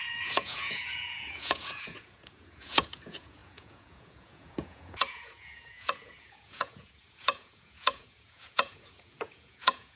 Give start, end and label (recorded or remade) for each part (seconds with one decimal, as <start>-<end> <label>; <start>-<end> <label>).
0.0-10.0 remade